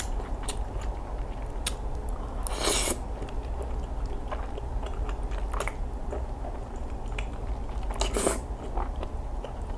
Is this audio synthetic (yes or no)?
no